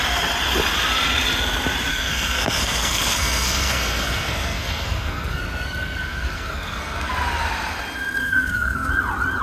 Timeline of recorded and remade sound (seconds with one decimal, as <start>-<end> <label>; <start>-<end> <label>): 0.0-1.9 recorded; 1.9-7.1 remade; 7.1-8.2 recorded; 8.2-8.9 remade; 8.9-9.4 recorded